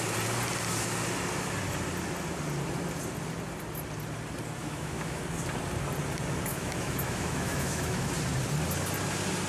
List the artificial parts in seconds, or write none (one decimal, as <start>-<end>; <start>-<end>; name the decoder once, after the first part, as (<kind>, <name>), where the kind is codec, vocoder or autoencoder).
4.6-5.2 (autoencoder, DAC-VAE); 6.5-8.1